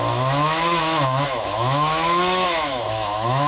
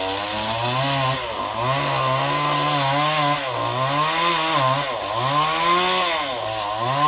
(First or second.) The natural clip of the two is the second